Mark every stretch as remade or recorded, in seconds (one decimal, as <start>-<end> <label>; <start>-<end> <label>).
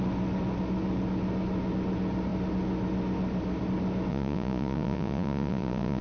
0.0-4.1 recorded; 4.1-6.0 remade